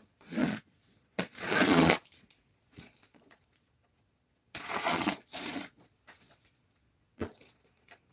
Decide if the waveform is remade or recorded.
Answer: remade